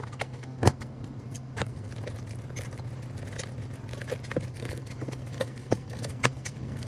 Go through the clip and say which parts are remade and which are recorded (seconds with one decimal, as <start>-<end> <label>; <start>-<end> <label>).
0.0-1.9 remade; 1.9-4.5 recorded; 4.5-6.9 remade